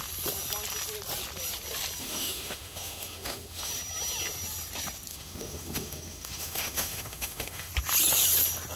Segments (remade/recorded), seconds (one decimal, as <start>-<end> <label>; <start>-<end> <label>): 0.0-2.0 recorded; 2.0-3.7 remade; 3.7-5.1 recorded; 5.1-7.7 remade; 7.7-8.8 recorded